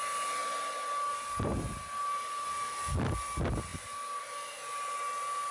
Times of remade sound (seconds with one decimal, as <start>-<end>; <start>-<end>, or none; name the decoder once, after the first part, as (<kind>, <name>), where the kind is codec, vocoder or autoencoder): none